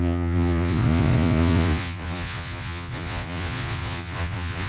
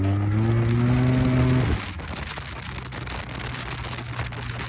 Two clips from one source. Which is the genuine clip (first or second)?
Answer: second